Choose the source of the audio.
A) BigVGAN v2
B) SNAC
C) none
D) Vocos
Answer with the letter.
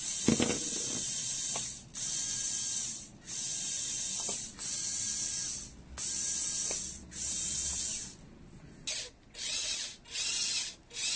C